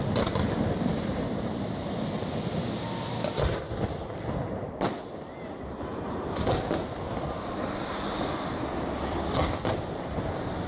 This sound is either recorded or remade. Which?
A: recorded